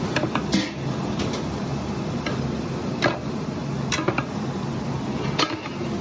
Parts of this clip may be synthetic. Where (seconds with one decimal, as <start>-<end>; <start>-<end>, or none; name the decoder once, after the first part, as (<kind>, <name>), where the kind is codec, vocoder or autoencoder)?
none